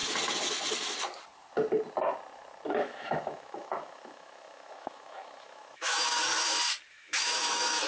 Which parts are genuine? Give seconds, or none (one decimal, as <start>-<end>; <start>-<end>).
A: 0.0-2.7; 6.2-6.9

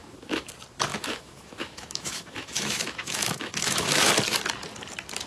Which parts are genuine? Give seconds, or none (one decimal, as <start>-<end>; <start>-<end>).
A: 0.5-0.9; 4.1-5.3

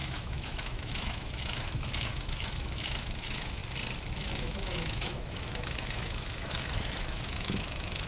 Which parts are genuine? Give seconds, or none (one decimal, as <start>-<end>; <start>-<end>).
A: 3.6-4.1

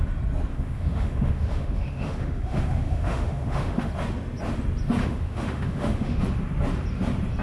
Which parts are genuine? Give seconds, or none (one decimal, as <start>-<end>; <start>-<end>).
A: 0.0-0.5; 3.9-5.0; 6.2-7.4